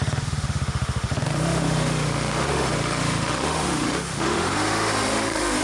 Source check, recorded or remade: remade